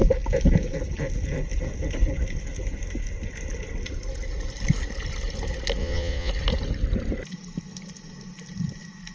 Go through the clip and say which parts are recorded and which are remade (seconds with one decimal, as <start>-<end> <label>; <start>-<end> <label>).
0.0-5.8 recorded; 5.8-6.3 remade; 6.3-9.1 recorded